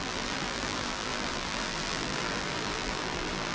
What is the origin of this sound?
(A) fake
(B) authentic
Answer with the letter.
A